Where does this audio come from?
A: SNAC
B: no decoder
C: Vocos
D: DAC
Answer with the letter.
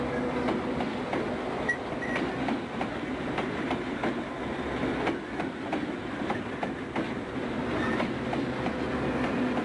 B